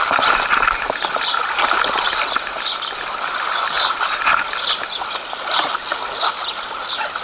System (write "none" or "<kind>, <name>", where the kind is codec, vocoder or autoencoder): none